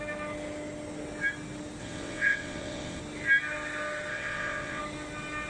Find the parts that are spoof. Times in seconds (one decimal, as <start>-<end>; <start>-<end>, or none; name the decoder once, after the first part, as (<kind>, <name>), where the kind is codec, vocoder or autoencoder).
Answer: 1.8-3.0 (vocoder, WaveNeXt); 4.1-4.8